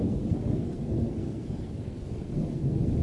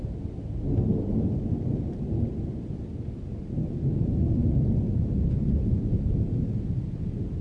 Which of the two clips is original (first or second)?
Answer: second